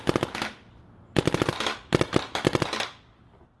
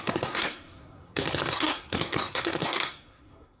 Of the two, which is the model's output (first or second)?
second